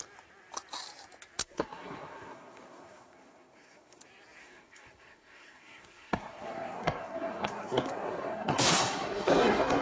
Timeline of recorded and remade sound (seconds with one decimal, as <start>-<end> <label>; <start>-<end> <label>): 0.0-1.4 recorded; 1.4-4.0 remade; 4.0-4.4 recorded; 4.4-9.8 remade